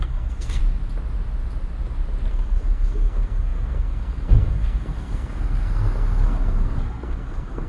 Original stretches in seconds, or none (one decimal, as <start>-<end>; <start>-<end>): 0.6-2.3